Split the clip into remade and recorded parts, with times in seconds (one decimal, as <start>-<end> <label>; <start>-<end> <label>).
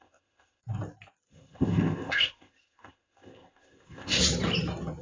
0.0-0.6 remade; 0.6-1.3 recorded; 1.3-4.2 remade; 4.2-5.0 recorded